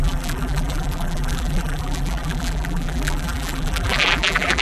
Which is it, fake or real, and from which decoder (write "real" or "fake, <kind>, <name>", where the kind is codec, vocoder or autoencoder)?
fake, vocoder, BigVGAN v2